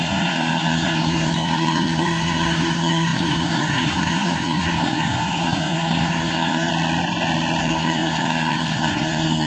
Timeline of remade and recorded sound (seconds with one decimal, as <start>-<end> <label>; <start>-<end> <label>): 0.0-6.7 remade; 6.7-7.6 recorded; 7.6-9.5 remade